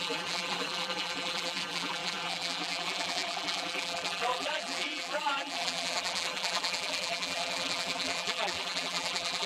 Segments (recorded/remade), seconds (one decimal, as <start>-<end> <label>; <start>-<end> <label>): 0.0-9.5 remade